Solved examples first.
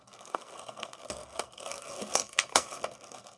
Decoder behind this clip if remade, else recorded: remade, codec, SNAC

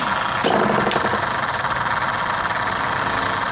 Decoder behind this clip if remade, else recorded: recorded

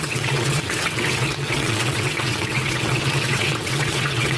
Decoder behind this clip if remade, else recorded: remade, vocoder, WaveNeXt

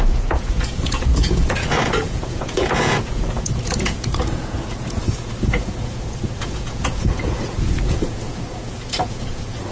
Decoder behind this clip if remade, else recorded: remade, vocoder, Vocos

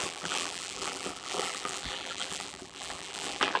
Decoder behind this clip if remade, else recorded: remade, vocoder, BigVGAN v2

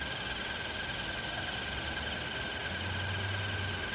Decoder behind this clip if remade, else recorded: recorded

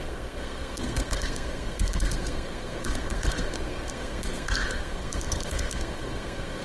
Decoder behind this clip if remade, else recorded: remade, codec, SNAC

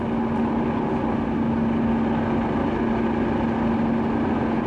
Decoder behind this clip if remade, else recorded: recorded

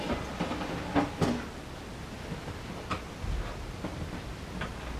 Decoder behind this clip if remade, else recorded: recorded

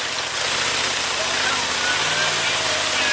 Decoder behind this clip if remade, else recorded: recorded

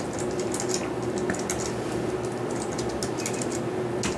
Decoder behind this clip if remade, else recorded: recorded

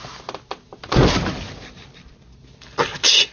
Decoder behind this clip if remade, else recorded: recorded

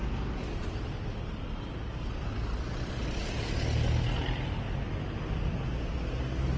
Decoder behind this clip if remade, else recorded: recorded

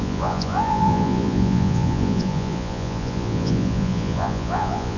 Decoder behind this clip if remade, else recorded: remade, vocoder, Vocos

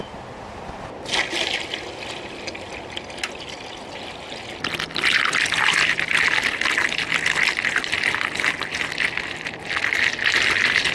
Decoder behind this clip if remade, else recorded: recorded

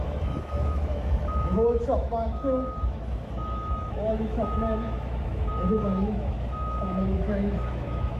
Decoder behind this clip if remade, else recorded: remade, autoencoder, DAC-VAE